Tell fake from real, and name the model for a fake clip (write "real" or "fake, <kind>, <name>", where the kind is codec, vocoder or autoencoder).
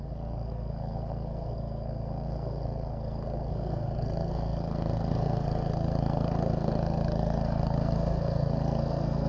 fake, codec, SNAC